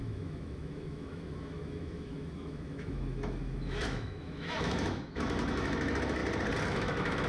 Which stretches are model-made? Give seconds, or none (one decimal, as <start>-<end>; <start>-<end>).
0.0-6.2; 6.7-7.3